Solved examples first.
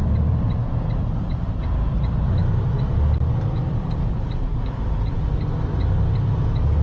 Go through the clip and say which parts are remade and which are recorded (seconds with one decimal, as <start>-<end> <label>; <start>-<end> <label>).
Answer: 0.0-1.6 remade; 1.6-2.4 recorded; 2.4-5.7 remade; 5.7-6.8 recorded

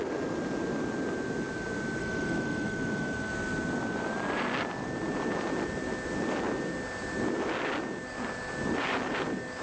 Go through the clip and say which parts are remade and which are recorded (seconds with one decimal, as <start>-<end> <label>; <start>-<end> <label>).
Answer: 0.0-2.0 recorded; 2.0-3.3 remade; 3.3-9.6 recorded

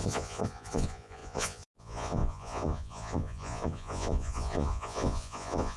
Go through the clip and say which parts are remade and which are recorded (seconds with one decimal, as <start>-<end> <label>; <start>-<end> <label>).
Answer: 0.0-5.8 remade

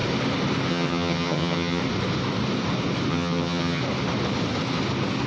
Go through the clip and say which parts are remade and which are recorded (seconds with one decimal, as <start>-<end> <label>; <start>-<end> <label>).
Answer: 0.0-0.7 recorded; 0.7-1.8 remade; 1.8-3.1 recorded; 3.1-3.8 remade; 3.8-5.3 recorded

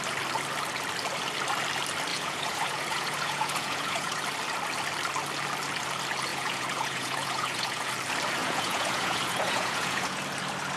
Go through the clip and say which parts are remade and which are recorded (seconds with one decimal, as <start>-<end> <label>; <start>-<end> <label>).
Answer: 0.0-2.1 recorded; 2.1-4.2 remade; 4.2-6.3 recorded; 6.3-7.9 remade; 7.9-8.4 recorded; 8.4-10.2 remade; 10.2-10.8 recorded

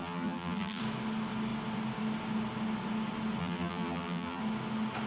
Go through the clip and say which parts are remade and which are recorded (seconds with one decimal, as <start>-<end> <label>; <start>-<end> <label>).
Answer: 0.0-0.8 remade; 0.8-3.4 recorded; 3.4-4.4 remade; 4.4-5.1 recorded